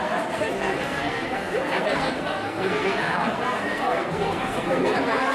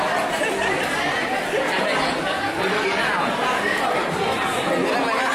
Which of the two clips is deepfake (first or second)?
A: first